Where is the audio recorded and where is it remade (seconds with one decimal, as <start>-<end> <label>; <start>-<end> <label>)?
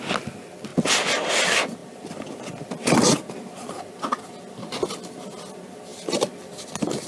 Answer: 0.0-0.7 recorded; 0.7-1.3 remade; 1.3-5.9 recorded; 5.9-7.1 remade